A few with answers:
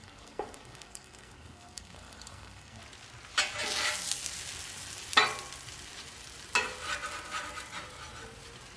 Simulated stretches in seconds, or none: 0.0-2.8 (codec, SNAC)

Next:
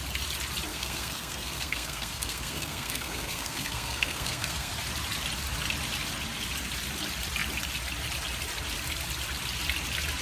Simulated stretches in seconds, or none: 0.7-4.7 (codec, SNAC)

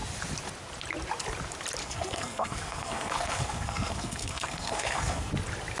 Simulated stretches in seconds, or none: 1.8-5.3 (codec, SNAC)